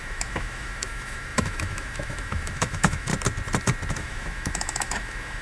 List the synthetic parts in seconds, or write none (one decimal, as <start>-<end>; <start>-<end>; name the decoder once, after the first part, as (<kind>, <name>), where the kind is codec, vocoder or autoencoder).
0.0-3.1 (autoencoder, DAC-VAE); 3.9-5.4